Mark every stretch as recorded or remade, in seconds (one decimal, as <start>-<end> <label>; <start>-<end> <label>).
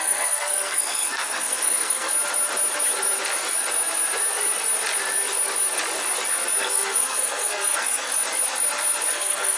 0.0-2.1 remade; 2.1-6.6 recorded; 6.6-8.1 remade; 8.1-9.1 recorded; 9.1-9.6 remade